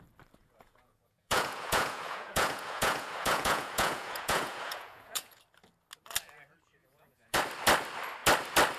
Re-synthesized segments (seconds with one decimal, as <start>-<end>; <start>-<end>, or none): 0.4-5.4; 6.8-7.4